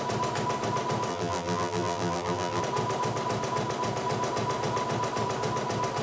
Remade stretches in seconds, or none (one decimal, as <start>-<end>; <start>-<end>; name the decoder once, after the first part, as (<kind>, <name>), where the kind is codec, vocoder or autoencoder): 1.1-2.6 (vocoder, BigVGAN v2)